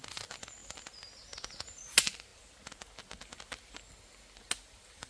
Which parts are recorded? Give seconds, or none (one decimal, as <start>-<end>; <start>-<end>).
0.0-5.1

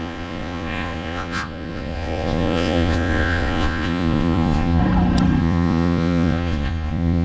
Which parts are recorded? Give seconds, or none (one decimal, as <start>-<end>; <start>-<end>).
4.8-5.4

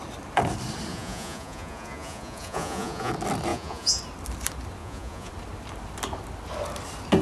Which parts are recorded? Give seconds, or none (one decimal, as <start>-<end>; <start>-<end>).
0.0-0.9; 3.1-3.5; 4.0-4.8; 5.3-7.2

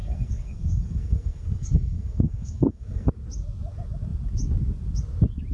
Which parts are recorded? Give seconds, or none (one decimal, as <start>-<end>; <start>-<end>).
3.1-5.5

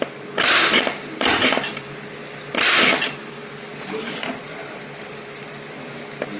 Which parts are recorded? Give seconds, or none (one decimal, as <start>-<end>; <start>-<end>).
0.0-3.7; 4.7-6.4

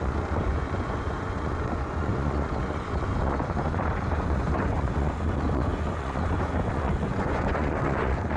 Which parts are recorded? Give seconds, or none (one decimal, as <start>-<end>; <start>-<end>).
none

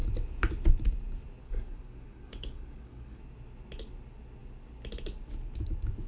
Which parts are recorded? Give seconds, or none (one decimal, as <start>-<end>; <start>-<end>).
0.0-1.4; 3.2-6.1